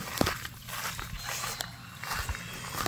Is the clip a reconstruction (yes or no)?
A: no